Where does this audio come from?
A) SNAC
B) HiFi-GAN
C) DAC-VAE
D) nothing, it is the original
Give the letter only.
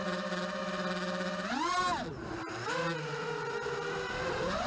D